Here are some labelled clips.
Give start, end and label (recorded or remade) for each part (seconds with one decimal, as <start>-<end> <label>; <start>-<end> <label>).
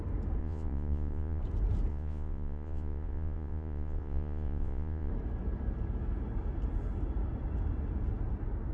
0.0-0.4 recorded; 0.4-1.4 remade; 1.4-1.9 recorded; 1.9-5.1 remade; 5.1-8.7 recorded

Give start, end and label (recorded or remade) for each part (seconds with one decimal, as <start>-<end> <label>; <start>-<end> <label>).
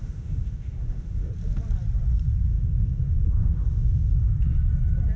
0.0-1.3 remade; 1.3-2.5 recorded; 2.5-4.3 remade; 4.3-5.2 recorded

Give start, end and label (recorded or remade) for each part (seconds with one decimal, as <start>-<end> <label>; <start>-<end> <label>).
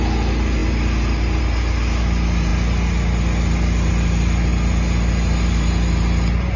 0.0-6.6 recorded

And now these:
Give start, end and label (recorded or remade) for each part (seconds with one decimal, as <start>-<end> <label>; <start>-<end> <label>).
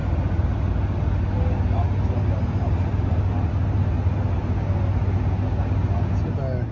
0.0-6.7 recorded